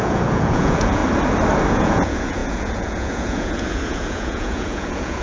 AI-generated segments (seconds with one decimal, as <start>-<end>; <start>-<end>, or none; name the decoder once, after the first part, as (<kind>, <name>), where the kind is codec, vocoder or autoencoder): 0.0-1.0 (vocoder, Vocos); 1.7-5.2